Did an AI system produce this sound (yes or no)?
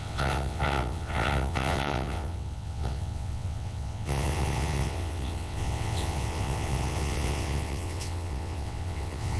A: yes